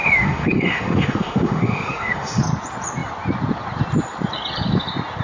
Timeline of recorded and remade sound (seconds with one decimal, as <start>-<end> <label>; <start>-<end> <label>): 0.0-2.4 remade; 2.4-5.2 recorded